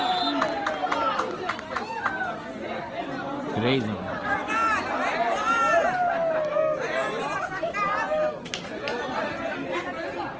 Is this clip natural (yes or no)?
yes